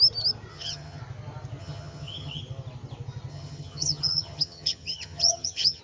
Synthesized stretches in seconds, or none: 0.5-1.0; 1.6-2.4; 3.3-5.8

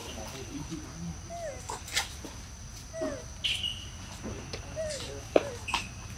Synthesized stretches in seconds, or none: none

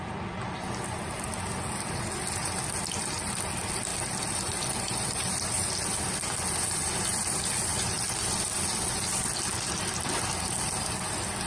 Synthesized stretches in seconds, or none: none

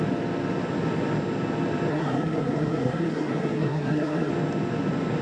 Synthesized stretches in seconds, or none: 1.9-4.3

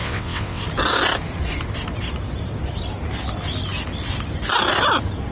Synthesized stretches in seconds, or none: 0.0-0.6

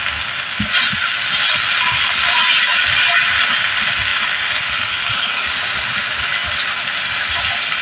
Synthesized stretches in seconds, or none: none